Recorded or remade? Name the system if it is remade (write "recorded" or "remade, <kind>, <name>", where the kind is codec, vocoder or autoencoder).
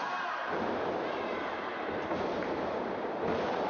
recorded